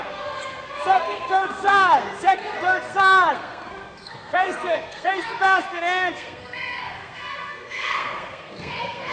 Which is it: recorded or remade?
remade